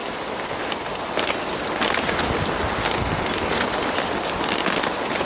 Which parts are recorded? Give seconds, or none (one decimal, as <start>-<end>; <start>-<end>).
0.0-5.3